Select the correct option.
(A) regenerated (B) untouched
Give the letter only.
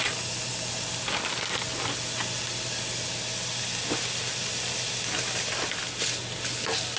B